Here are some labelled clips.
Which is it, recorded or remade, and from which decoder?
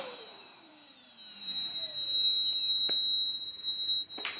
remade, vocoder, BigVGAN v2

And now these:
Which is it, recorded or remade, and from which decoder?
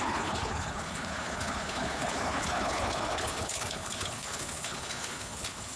remade, codec, HILCodec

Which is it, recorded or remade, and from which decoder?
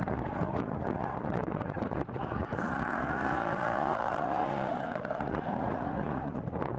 remade, vocoder, Vocos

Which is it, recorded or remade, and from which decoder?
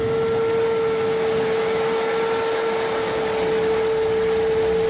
recorded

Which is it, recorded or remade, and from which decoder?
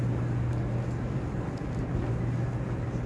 recorded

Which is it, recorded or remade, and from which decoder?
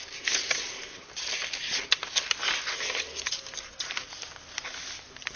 recorded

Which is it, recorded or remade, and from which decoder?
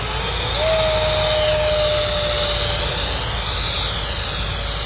recorded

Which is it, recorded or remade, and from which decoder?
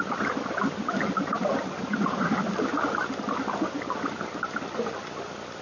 recorded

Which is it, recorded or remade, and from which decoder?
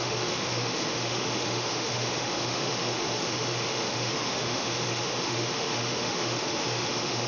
remade, autoencoder, DAC-VAE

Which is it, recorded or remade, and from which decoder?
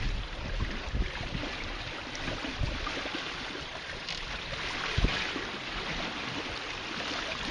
recorded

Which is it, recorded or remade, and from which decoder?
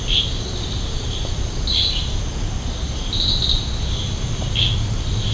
recorded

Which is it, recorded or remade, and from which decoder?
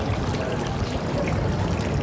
recorded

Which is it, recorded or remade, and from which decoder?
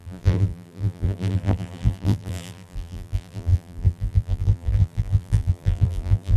remade, vocoder, BigVGAN v2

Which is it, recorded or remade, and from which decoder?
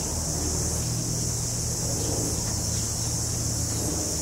recorded